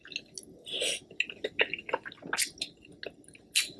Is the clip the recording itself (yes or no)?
yes